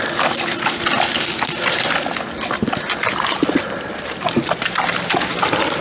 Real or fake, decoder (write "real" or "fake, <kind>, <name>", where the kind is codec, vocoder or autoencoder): real